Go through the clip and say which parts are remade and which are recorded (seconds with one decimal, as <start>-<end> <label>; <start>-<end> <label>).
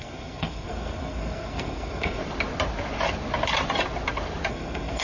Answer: 0.0-2.2 remade; 2.2-4.5 recorded; 4.5-5.0 remade